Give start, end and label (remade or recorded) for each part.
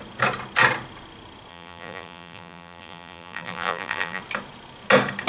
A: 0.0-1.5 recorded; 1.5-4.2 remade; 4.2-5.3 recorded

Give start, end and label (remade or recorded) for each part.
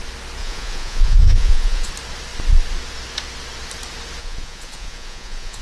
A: 0.0-0.4 recorded; 0.4-1.9 remade; 1.9-4.2 recorded; 4.2-5.6 remade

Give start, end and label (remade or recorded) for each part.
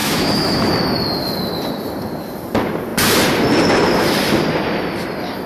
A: 0.0-0.7 remade; 0.7-5.5 recorded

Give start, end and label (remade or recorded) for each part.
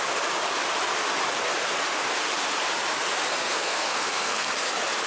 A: 0.0-3.4 recorded; 3.4-4.5 remade; 4.5-5.1 recorded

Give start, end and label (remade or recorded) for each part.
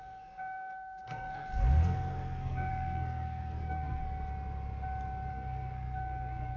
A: 0.0-4.0 remade; 4.0-5.3 recorded; 5.3-6.6 remade